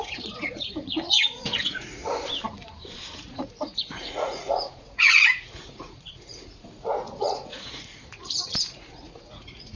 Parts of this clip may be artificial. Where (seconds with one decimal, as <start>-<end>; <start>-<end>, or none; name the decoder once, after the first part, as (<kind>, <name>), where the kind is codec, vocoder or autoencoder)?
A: 0.0-2.0 (vocoder, Vocos); 3.0-9.8